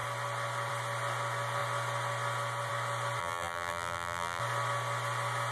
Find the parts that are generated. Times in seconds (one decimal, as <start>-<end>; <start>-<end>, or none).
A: 3.2-4.4